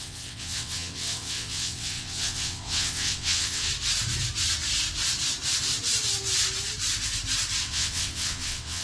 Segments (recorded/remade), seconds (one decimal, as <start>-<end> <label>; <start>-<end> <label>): 0.0-3.7 remade; 3.7-7.6 recorded; 7.6-8.8 remade

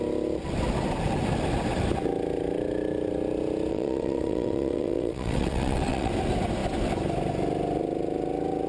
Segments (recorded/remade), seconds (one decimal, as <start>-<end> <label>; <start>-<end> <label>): 0.0-3.7 recorded; 3.7-6.1 remade; 6.1-8.7 recorded